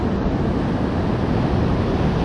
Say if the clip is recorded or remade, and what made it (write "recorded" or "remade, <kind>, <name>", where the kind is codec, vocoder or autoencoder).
recorded